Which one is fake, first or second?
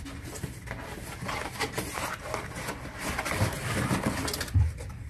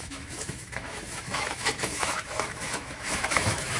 second